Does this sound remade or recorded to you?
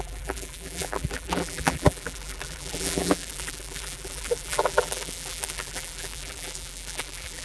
remade